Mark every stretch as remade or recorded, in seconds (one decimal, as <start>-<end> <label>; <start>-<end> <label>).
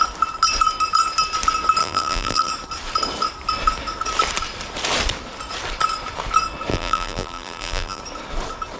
0.0-1.8 recorded; 1.8-2.5 remade; 2.5-6.7 recorded; 6.7-8.0 remade; 8.0-8.8 recorded